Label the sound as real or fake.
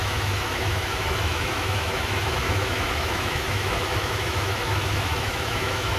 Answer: fake